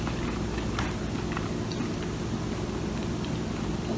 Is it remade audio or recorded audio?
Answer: recorded